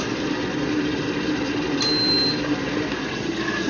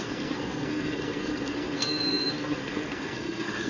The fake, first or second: second